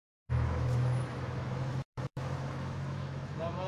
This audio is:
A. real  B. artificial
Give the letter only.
B